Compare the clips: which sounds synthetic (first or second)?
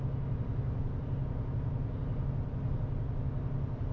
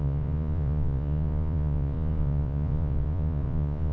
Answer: second